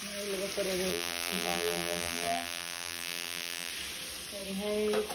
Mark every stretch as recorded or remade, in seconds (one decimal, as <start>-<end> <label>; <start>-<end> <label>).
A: 0.0-0.9 recorded; 0.9-3.7 remade; 3.7-5.1 recorded